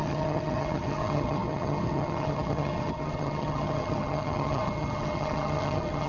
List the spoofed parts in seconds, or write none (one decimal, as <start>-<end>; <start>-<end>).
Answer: 0.0-6.1

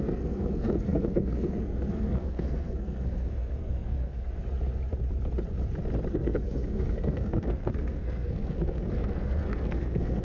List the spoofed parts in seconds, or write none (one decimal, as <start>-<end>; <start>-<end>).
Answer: 0.0-4.4; 6.1-10.2

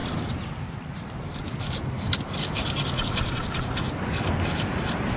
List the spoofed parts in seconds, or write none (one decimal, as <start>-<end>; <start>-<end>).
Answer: none

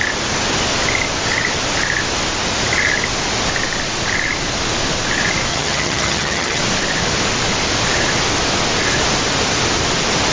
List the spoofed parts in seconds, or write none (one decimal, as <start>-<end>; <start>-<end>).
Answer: 5.5-6.6

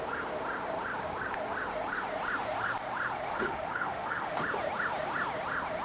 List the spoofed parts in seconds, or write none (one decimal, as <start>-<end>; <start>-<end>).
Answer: 3.3-4.4

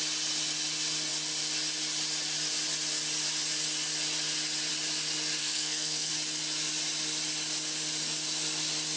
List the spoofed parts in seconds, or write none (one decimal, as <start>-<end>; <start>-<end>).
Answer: 5.4-6.1

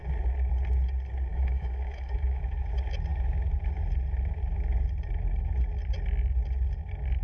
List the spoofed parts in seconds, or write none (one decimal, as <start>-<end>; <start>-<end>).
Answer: 1.3-2.4

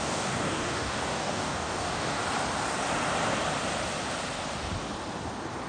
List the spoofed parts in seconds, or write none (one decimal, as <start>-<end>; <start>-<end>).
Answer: 0.0-2.2